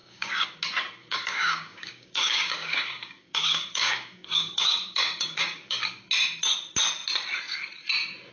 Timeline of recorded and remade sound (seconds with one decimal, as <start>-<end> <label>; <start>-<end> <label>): 0.0-0.6 remade; 0.6-1.0 recorded; 1.0-5.8 remade; 5.8-8.3 recorded